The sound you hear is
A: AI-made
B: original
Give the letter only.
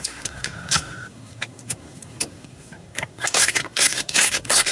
A